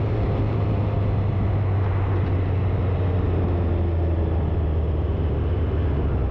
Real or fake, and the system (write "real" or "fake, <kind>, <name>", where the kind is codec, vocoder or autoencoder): real